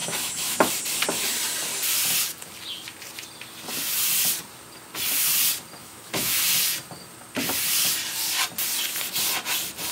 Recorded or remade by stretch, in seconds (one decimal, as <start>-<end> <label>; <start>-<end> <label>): 0.0-0.7 remade; 0.7-5.8 recorded; 5.8-6.4 remade; 6.4-9.9 recorded